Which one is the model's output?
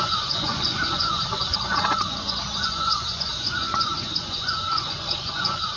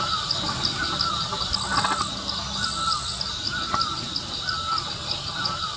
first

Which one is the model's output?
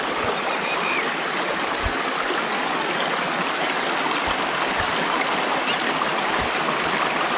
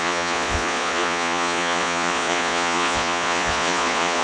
second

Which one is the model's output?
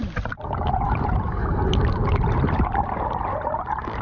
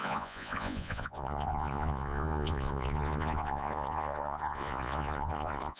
second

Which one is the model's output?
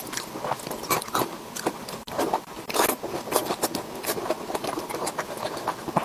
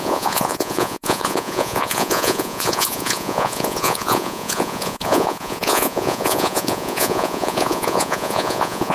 second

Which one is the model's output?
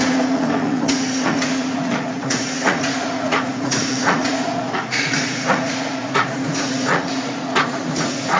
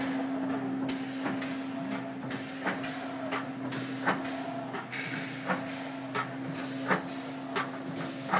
first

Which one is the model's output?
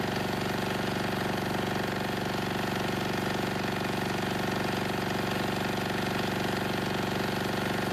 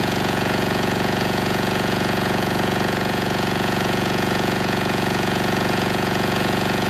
second